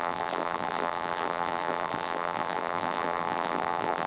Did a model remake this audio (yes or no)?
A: yes